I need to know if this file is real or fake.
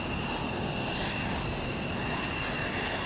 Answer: real